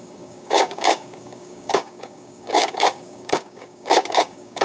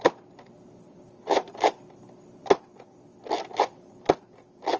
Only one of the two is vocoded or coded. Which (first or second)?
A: first